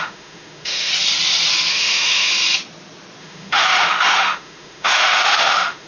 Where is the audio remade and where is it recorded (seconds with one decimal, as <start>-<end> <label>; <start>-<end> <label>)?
0.0-0.9 remade; 0.9-1.7 recorded; 1.7-2.3 remade; 2.3-3.2 recorded; 3.2-5.9 remade